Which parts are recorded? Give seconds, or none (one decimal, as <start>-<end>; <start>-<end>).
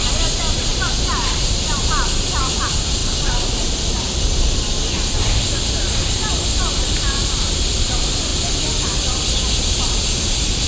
0.7-2.4; 8.3-10.7